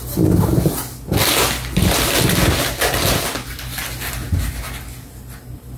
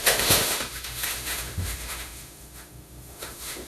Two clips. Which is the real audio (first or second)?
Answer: first